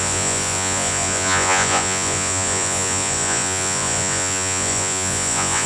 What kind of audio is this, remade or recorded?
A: remade